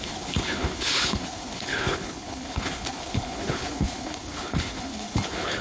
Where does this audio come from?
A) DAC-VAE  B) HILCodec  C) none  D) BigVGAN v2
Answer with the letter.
B